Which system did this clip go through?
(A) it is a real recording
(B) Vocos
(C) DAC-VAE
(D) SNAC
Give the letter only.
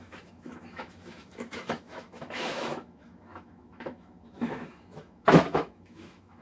C